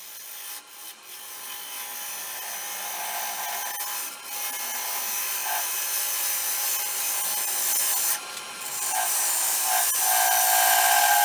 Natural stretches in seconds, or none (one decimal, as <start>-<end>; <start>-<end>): 0.0-11.2